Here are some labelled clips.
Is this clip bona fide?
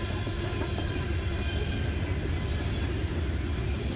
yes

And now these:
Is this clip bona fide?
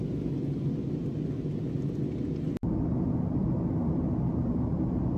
yes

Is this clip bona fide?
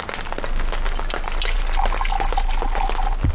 yes